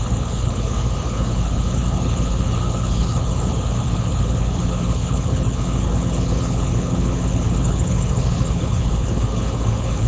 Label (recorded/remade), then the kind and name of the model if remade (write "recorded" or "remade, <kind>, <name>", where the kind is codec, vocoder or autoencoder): remade, codec, HILCodec